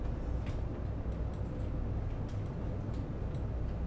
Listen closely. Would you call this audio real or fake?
real